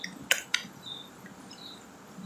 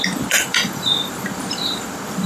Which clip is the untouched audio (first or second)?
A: first